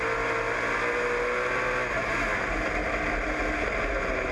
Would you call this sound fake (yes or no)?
no